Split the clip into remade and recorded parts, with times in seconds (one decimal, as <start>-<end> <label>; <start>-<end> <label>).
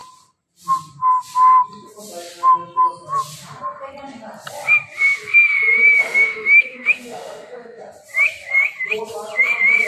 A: 0.0-6.0 recorded; 6.0-7.8 remade; 7.8-9.9 recorded